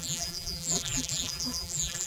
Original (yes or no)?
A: no